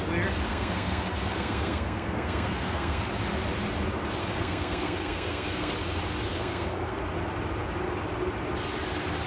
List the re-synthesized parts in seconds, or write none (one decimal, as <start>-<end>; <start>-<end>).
0.5-3.1; 4.2-5.7; 6.3-7.0